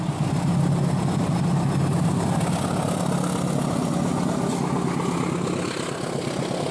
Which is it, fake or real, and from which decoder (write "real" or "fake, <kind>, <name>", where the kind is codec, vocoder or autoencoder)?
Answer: real